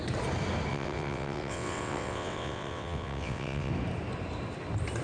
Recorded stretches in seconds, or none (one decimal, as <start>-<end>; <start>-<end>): 0.0-0.7; 3.7-5.0